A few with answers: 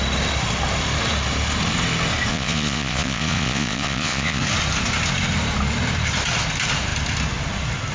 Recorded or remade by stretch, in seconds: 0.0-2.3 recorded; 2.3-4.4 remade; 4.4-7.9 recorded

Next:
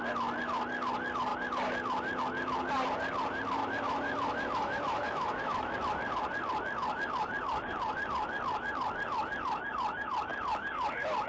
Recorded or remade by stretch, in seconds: 0.0-3.6 recorded; 3.6-5.9 remade; 5.9-11.3 recorded

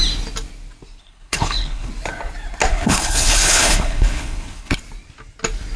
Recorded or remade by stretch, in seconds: 0.0-1.0 recorded; 1.0-1.9 remade; 1.9-2.7 recorded; 2.7-4.8 remade; 4.8-5.8 recorded

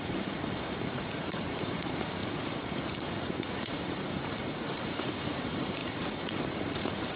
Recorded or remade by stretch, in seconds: 0.0-7.2 remade

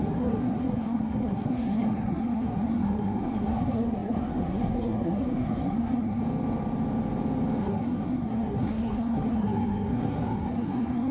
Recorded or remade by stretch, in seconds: 0.0-6.2 remade; 6.2-7.6 recorded; 7.6-11.1 remade

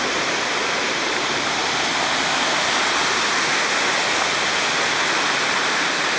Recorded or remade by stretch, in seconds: 0.0-1.6 remade; 1.6-5.3 recorded; 5.3-6.2 remade